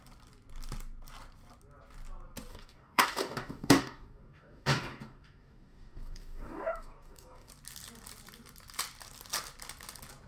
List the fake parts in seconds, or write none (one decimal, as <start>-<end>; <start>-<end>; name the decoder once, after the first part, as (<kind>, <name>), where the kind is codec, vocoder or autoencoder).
2.5-7.5 (codec, DAC)